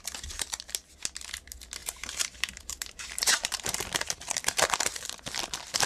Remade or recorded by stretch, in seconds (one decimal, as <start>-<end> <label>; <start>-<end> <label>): 0.0-1.8 recorded; 1.8-5.3 remade; 5.3-5.9 recorded